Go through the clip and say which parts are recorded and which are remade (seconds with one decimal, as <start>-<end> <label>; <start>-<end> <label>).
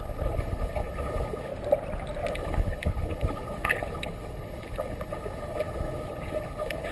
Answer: 0.0-1.5 remade; 1.5-2.3 recorded; 2.3-6.9 remade